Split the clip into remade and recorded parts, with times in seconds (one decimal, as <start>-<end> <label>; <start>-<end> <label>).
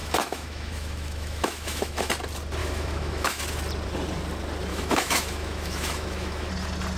0.0-2.1 remade; 2.1-2.6 recorded; 2.6-3.4 remade; 3.4-4.7 recorded; 4.7-6.5 remade; 6.5-7.0 recorded